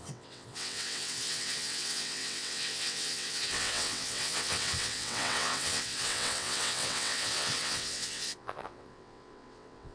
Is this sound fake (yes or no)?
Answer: yes